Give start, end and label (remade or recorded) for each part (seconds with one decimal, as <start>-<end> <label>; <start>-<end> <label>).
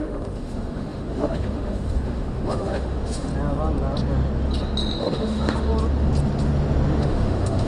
0.0-3.3 remade; 3.3-5.0 recorded; 5.0-5.7 remade; 5.7-7.0 recorded; 7.0-7.7 remade